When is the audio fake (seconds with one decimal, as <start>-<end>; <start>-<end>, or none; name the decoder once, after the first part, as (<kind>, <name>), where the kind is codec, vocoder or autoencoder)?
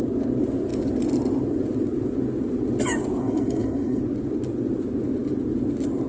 3.2-4.0 (codec, SNAC)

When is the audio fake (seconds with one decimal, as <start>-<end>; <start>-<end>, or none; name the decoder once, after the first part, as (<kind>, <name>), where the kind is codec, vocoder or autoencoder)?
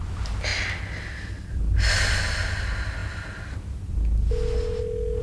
none